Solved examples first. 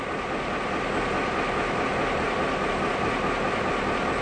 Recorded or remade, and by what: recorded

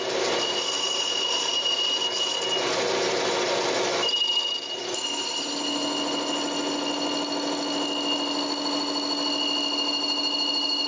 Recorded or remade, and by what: recorded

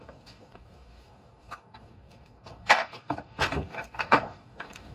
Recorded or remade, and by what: remade, codec, DAC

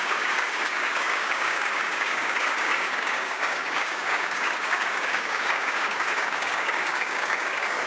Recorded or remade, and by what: remade, codec, DAC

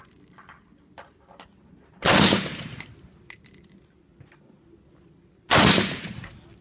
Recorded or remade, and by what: recorded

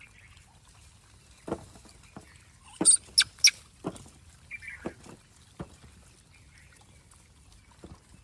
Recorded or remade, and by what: recorded